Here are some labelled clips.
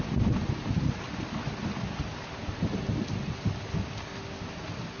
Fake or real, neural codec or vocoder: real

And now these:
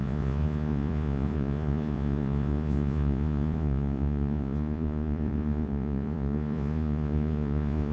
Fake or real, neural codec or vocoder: fake, vocoder, Vocos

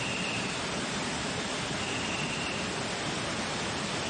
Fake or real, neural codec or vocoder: real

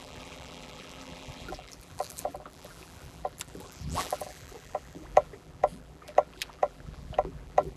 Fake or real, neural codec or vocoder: fake, vocoder, BigVGAN v2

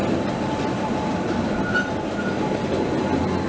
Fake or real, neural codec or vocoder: real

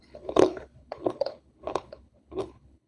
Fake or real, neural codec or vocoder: fake, codec, HILCodec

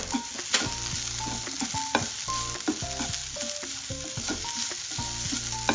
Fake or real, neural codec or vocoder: real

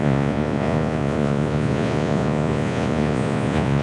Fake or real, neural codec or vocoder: fake, vocoder, Vocos